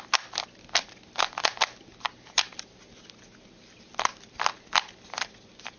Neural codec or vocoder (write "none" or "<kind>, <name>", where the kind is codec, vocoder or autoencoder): none